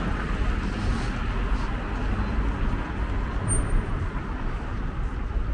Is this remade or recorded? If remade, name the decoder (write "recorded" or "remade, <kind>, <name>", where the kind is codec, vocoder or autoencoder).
recorded